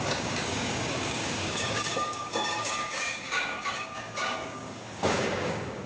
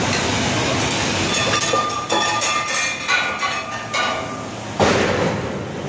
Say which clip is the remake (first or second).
first